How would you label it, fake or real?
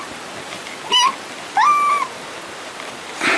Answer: real